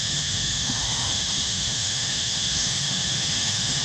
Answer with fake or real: fake